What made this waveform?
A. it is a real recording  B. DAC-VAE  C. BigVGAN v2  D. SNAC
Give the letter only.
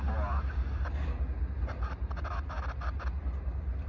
A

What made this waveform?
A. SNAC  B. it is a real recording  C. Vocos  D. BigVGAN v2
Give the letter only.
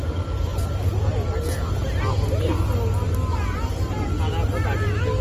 B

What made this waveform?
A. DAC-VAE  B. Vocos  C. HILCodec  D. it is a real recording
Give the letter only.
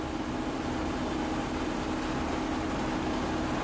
D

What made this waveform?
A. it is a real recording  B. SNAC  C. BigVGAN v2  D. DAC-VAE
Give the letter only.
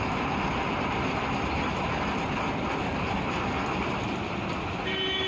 A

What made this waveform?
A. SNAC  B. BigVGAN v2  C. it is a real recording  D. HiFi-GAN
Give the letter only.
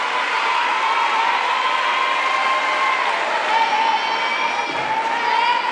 C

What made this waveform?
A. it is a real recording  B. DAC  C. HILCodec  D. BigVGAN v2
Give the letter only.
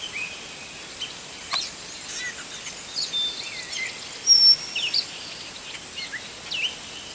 A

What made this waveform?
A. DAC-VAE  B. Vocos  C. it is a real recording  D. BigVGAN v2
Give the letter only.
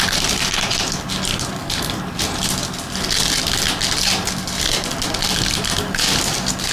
C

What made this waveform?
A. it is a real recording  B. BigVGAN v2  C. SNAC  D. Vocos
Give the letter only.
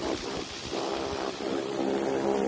A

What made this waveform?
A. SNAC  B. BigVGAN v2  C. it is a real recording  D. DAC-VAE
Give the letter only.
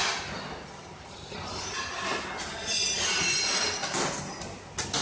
C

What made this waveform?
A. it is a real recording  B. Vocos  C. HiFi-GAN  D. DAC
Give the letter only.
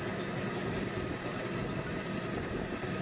A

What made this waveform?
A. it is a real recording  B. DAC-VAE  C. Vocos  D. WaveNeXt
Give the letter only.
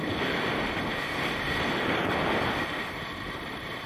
A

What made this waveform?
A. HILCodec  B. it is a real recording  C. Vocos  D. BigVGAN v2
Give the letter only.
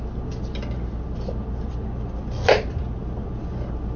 B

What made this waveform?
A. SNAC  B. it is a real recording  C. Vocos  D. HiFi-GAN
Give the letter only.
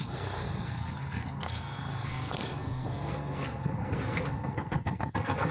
A